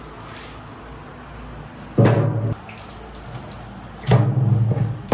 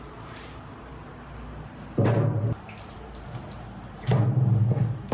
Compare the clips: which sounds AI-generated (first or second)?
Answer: second